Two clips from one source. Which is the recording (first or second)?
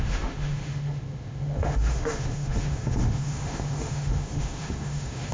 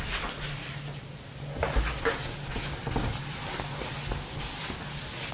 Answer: second